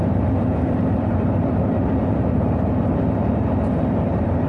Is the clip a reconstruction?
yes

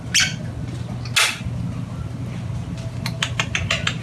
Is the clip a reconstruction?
no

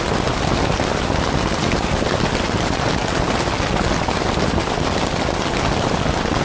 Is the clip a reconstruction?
no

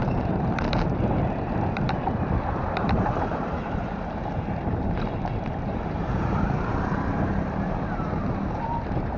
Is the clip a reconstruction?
yes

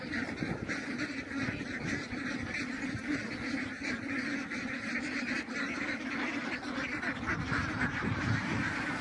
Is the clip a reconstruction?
yes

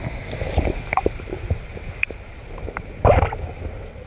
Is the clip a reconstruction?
yes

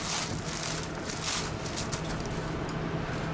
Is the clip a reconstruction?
no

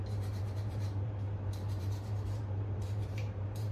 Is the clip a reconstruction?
yes